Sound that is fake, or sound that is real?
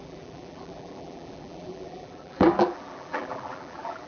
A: fake